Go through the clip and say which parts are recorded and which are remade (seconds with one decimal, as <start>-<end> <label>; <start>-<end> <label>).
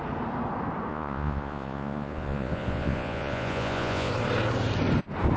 0.0-0.9 recorded; 0.9-4.1 remade; 4.1-5.4 recorded